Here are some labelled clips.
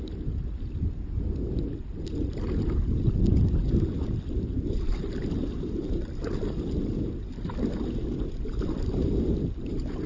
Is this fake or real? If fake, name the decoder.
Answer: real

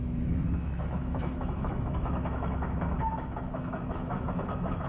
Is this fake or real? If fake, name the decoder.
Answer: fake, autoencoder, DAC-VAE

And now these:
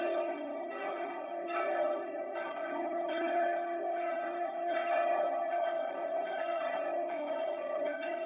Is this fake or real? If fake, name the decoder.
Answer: fake, vocoder, HiFi-GAN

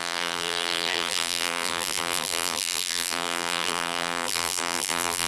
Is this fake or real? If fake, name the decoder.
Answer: fake, vocoder, BigVGAN v2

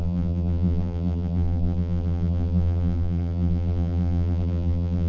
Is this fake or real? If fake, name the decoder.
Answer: fake, vocoder, BigVGAN v2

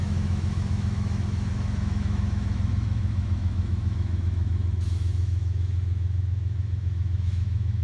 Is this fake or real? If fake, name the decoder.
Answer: fake, autoencoder, DAC-VAE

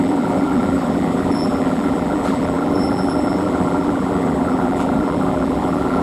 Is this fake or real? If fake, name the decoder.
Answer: fake, vocoder, BigVGAN v2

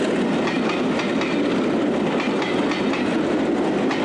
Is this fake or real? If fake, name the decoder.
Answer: real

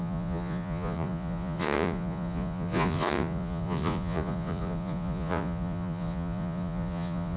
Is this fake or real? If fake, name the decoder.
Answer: fake, vocoder, Vocos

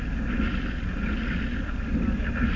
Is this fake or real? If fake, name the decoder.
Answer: real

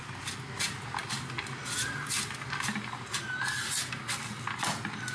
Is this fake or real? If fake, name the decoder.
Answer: real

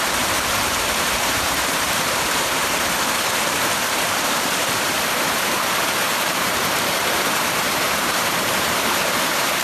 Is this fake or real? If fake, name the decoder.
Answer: fake, vocoder, BigVGAN v2